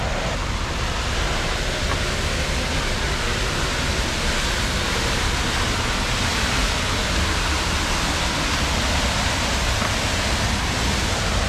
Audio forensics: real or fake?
real